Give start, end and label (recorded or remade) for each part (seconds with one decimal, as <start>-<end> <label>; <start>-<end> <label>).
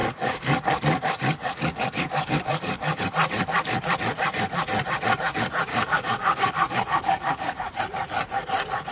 0.0-3.0 remade; 3.0-5.7 recorded; 5.7-7.8 remade; 7.8-8.9 recorded